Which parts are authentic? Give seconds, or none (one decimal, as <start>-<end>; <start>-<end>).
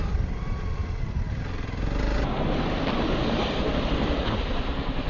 0.8-2.9